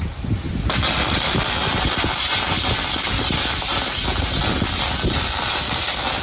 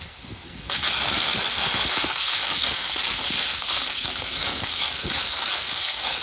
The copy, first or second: second